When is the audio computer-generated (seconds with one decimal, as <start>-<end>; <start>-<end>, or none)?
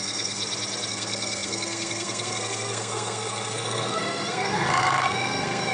0.0-0.4; 0.9-5.7